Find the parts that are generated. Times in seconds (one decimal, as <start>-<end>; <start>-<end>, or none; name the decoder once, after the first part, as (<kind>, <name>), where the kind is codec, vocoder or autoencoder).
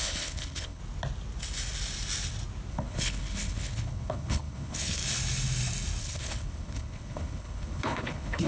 0.0-0.8 (codec, HILCodec); 2.7-5.0; 6.0-8.5